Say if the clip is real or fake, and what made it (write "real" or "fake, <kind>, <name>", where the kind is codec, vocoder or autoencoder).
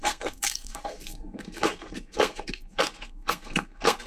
fake, codec, SNAC